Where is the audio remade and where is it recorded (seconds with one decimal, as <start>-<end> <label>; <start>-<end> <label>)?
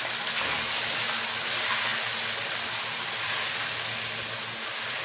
0.0-5.0 recorded